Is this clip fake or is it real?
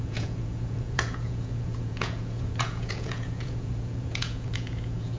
fake